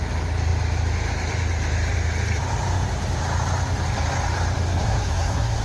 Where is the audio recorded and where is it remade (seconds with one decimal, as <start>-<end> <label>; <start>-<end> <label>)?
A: 0.0-4.7 recorded; 4.7-5.6 remade